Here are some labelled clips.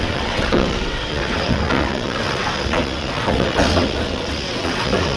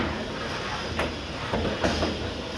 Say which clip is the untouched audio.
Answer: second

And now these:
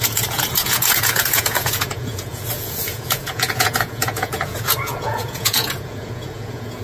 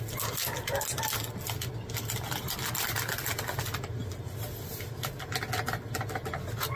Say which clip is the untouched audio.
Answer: second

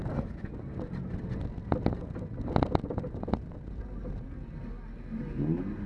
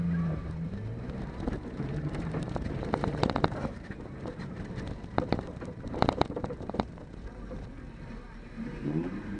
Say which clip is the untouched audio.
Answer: first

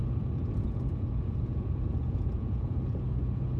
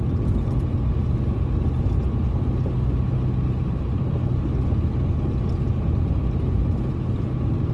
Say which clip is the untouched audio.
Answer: second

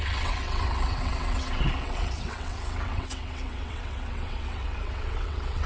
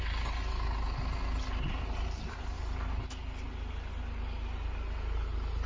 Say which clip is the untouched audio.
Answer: second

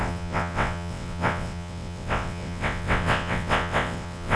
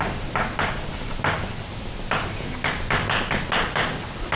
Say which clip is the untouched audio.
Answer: second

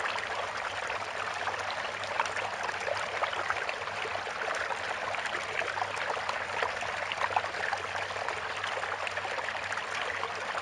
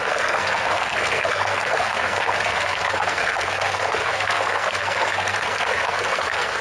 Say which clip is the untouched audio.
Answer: first